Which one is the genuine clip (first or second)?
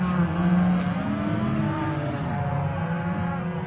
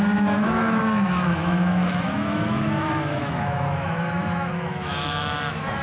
first